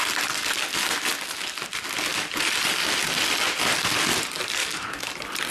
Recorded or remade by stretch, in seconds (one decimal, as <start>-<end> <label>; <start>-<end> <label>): 0.0-4.6 recorded; 4.6-5.1 remade; 5.1-5.5 recorded